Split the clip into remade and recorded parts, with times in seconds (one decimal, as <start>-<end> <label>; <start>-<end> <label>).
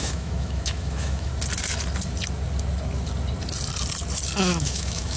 0.0-1.3 remade; 1.3-4.4 recorded; 4.4-5.2 remade